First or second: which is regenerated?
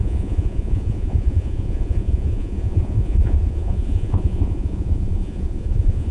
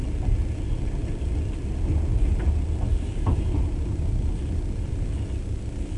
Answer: first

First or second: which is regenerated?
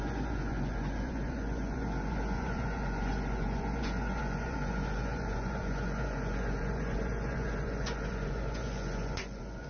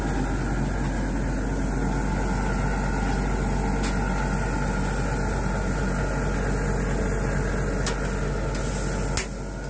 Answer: first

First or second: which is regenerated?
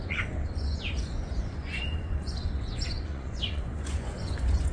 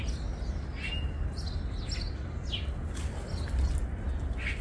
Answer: first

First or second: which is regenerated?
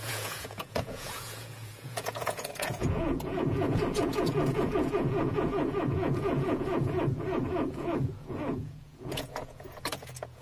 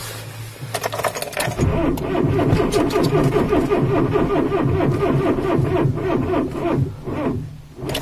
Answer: first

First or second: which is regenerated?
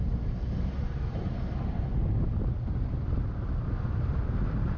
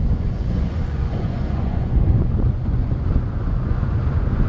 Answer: second